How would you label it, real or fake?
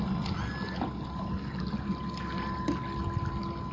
real